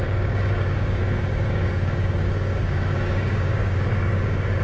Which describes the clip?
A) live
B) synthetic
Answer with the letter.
B